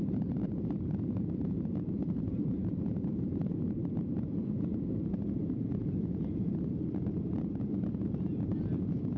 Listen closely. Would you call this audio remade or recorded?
remade